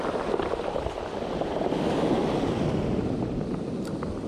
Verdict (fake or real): real